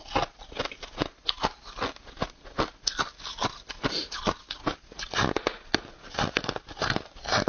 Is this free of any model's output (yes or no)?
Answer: yes